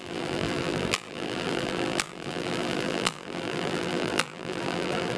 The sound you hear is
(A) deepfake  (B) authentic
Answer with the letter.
A